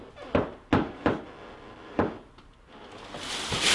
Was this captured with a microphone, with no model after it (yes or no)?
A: yes